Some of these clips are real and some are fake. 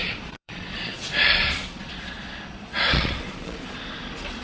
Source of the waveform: fake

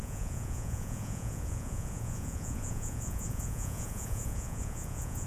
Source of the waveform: fake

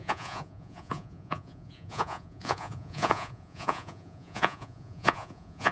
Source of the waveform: fake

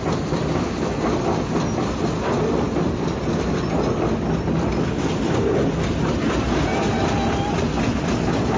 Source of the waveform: real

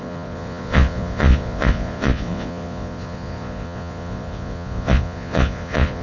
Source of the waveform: fake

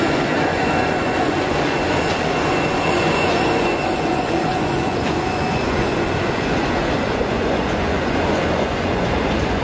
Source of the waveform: fake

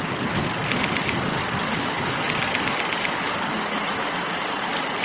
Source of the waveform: real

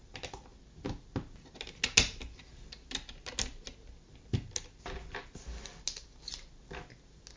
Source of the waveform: real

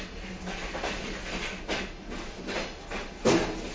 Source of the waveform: real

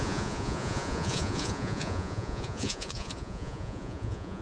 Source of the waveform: fake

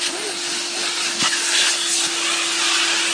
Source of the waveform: real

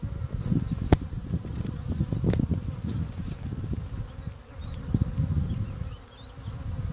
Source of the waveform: real